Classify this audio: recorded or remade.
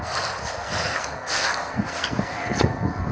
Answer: remade